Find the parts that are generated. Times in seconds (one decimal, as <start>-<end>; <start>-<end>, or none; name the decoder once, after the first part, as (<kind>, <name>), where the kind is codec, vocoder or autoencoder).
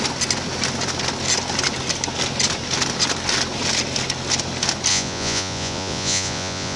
4.9-6.8 (vocoder, Vocos)